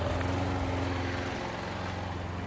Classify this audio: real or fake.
real